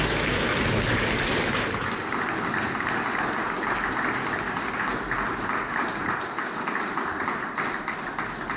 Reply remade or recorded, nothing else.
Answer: recorded